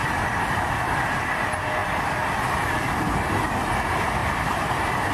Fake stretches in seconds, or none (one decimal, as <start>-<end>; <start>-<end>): 0.0-1.1; 1.8-3.4; 4.2-5.1